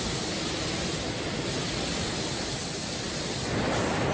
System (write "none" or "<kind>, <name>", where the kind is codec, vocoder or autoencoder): none